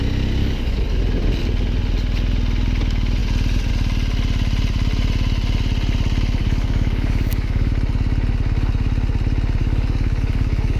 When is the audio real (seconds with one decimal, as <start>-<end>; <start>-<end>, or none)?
0.0-0.4; 1.0-6.4; 7.7-9.6